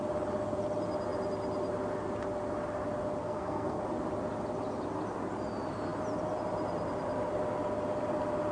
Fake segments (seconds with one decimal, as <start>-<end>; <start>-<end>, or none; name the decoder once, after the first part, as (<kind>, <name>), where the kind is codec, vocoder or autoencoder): 3.2-3.8 (codec, SNAC)